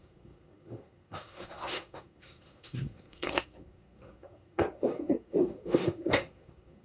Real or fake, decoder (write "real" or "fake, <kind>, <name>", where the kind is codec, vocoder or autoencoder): fake, codec, SNAC